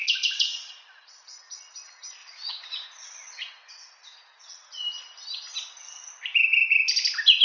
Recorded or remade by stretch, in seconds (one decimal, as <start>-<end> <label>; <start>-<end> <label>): 0.0-1.1 remade; 1.1-2.2 recorded; 2.2-4.8 remade; 4.8-7.4 recorded